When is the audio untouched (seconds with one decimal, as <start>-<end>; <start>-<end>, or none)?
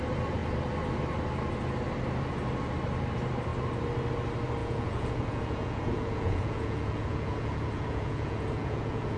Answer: 0.0-4.6